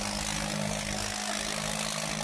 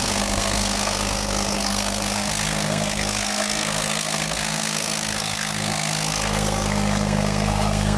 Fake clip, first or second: second